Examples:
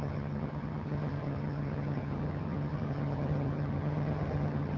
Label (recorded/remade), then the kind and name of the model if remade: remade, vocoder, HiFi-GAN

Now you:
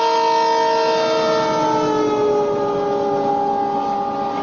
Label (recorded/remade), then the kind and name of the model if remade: recorded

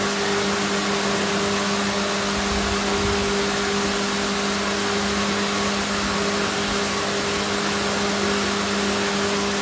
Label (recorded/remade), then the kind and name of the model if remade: recorded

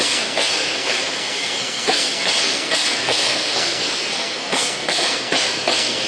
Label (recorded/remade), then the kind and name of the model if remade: remade, codec, SNAC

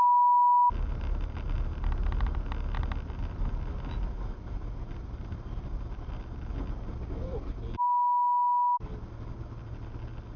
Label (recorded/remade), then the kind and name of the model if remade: recorded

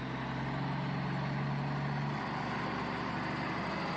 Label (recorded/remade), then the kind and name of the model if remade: recorded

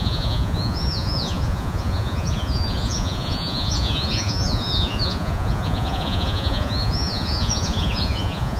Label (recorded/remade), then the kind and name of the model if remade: remade, vocoder, Vocos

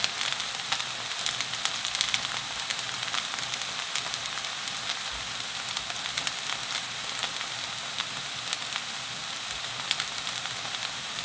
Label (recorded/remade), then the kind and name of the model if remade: recorded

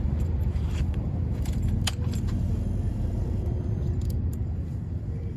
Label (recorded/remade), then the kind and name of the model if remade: remade, vocoder, BigVGAN v2